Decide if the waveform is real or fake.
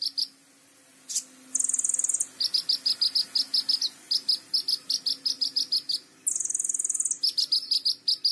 real